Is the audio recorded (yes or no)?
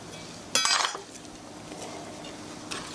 yes